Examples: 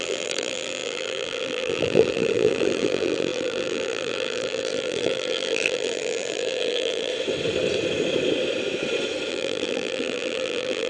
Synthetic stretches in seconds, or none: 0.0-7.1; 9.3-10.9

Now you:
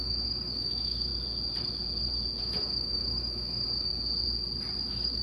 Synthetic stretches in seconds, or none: 0.0-1.1; 2.4-3.9; 4.8-5.2

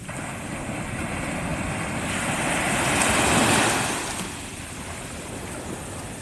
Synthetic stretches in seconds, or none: none

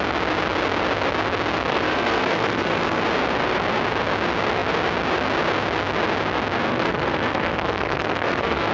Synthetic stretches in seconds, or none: 1.7-3.0; 6.7-8.7